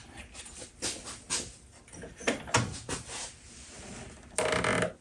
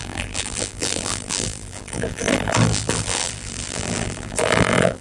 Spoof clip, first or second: second